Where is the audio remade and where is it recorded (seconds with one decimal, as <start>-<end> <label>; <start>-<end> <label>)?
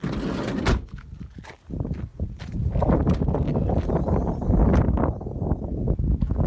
0.0-6.5 recorded